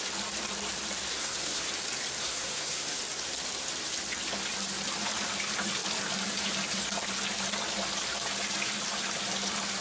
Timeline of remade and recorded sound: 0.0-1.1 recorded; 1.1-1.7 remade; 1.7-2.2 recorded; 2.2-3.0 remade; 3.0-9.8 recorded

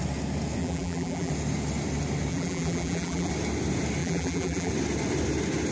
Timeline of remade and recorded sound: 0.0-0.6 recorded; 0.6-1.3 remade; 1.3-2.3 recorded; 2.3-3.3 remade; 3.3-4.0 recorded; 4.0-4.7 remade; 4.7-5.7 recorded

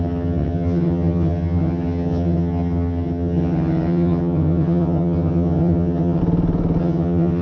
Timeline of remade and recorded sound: 0.0-6.2 remade; 6.2-6.8 recorded; 6.8-7.4 remade